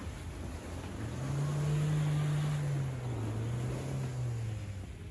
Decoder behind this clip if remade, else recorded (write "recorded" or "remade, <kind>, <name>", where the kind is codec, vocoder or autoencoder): recorded